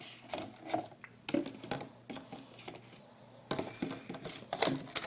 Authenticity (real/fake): real